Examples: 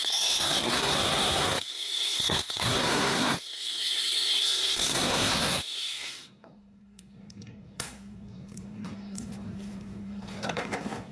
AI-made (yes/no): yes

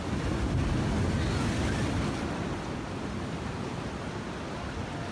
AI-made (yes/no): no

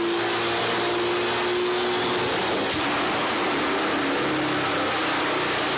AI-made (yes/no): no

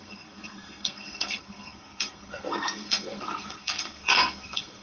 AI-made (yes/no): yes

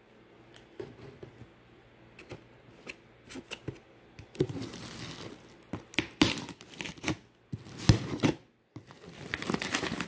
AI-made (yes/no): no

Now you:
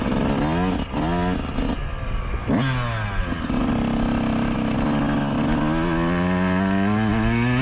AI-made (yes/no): no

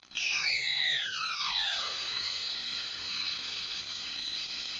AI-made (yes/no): yes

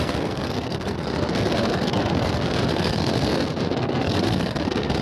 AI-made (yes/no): yes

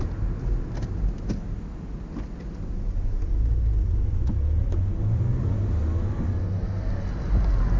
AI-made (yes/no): no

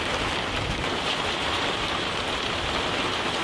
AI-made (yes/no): no